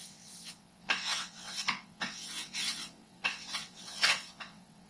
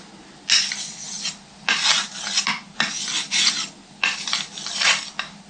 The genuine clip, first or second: second